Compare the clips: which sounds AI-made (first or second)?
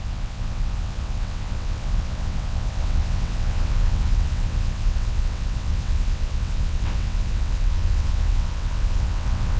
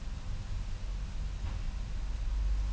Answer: first